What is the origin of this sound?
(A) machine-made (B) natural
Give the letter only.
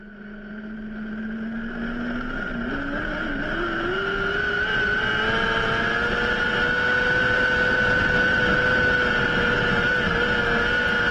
B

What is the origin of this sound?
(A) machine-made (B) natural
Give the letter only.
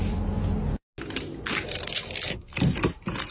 B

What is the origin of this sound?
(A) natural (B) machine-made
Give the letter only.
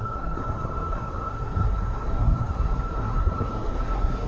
B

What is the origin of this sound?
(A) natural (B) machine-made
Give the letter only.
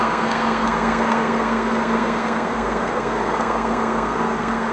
B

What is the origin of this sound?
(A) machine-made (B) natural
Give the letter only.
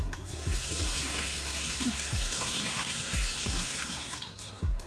A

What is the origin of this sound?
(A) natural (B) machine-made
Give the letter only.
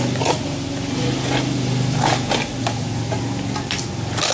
A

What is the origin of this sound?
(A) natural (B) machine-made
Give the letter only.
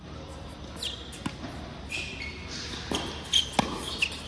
A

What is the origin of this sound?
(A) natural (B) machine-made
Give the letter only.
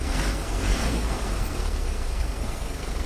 B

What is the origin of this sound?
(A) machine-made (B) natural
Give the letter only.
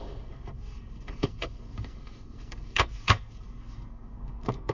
A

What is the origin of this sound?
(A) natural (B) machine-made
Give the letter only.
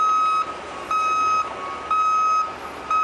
A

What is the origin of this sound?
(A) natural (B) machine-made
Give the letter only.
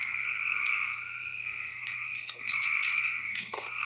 B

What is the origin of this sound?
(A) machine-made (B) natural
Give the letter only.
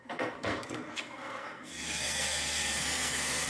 A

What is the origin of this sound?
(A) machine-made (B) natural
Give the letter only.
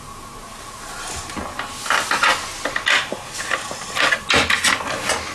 B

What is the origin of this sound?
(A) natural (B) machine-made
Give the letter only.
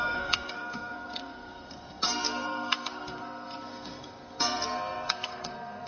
B